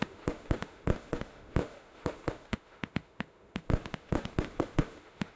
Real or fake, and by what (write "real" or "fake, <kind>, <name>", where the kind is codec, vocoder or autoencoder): fake, autoencoder, DAC-VAE